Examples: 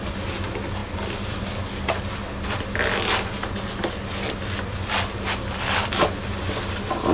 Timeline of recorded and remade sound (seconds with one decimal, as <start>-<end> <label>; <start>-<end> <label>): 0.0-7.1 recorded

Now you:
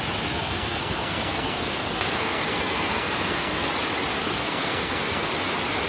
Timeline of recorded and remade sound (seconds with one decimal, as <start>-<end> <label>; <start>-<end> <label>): 0.0-0.4 recorded; 0.4-3.7 remade; 3.7-4.2 recorded; 4.2-5.3 remade; 5.3-5.9 recorded

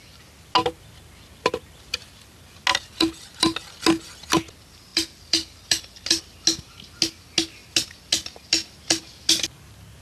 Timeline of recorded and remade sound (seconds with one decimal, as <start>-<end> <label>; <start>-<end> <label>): 0.0-2.7 recorded; 2.7-3.8 remade; 3.8-4.9 recorded; 4.9-6.2 remade; 6.2-10.0 recorded

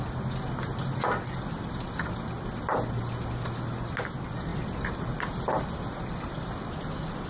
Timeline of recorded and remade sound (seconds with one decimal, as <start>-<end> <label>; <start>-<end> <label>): 0.0-7.3 recorded